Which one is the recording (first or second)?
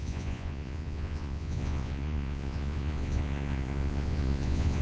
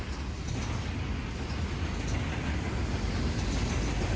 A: second